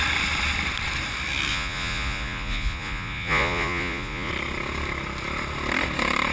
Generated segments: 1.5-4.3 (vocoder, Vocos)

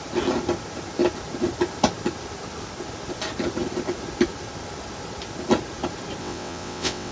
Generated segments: 6.2-7.1 (vocoder, WaveNeXt)

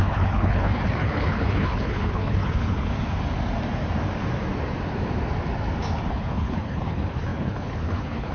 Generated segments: 0.0-2.9 (codec, HILCodec); 6.1-8.3

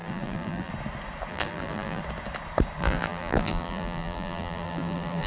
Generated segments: 0.0-0.7 (vocoder, BigVGAN v2); 1.3-2.0; 2.8-5.3

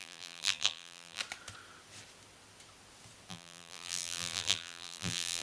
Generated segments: 0.0-1.2 (vocoder, BigVGAN v2); 3.3-5.4

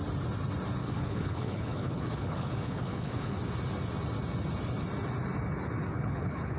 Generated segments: 0.8-3.4 (codec, HILCodec); 5.8-6.6

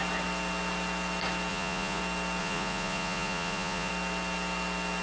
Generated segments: 1.5-2.0 (vocoder, Vocos); 2.4-3.9